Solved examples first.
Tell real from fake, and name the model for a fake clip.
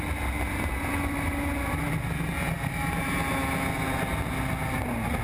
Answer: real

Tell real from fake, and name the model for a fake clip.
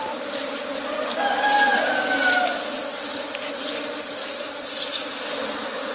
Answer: real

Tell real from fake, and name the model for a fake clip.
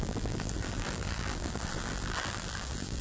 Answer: fake, vocoder, BigVGAN v2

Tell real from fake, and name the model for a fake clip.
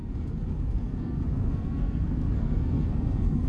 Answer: fake, codec, SNAC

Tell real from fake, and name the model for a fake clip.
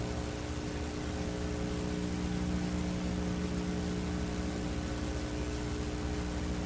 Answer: real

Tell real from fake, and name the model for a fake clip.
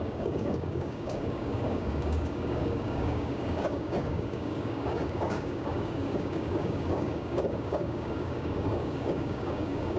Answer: fake, codec, DAC